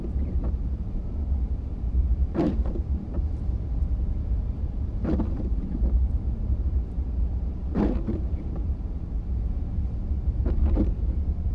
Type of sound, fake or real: fake